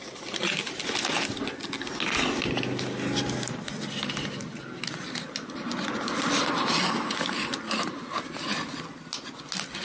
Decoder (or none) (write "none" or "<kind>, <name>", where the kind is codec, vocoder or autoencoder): none